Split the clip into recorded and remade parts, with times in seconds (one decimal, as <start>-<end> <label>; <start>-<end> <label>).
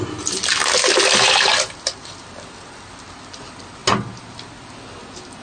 0.0-5.4 recorded